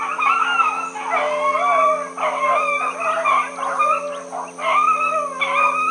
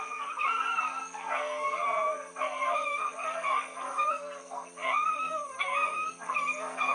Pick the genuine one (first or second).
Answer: first